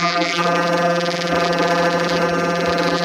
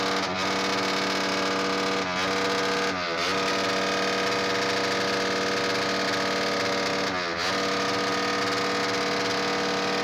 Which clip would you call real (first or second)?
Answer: second